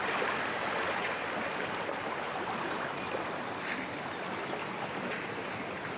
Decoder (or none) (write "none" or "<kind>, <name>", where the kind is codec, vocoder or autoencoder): none